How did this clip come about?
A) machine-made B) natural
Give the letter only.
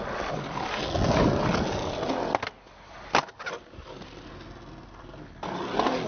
B